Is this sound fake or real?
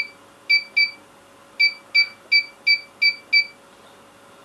real